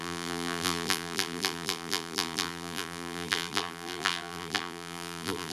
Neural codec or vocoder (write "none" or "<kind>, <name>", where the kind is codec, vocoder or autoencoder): vocoder, BigVGAN v2